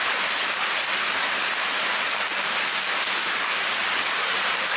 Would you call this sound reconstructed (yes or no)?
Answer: no